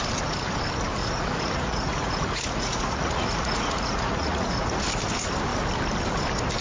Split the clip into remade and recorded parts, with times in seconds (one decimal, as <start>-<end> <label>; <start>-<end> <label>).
0.0-1.0 recorded; 1.0-4.8 remade; 4.8-6.6 recorded